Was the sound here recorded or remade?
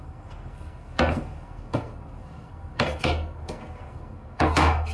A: remade